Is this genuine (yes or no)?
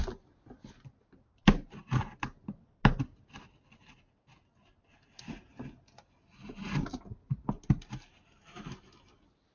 yes